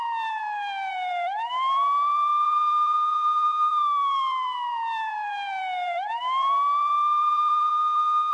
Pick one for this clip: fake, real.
fake